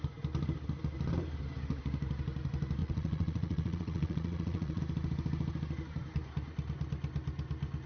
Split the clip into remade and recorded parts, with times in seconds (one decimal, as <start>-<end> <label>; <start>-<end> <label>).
0.0-2.8 recorded; 2.8-4.8 remade; 4.8-7.9 recorded